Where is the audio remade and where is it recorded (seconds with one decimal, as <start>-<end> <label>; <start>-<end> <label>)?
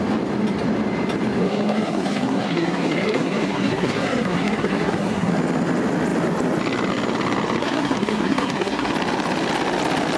0.0-1.4 recorded; 1.4-5.3 remade; 5.3-7.6 recorded; 7.6-8.9 remade; 8.9-10.2 recorded